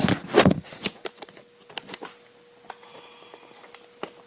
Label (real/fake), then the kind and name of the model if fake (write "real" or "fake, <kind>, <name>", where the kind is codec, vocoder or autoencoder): real